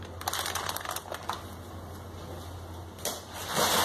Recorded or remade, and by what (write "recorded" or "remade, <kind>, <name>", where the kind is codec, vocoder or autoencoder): recorded